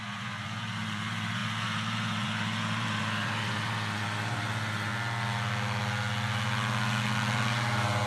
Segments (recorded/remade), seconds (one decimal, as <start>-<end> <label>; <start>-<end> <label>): 0.0-4.9 remade; 4.9-8.1 recorded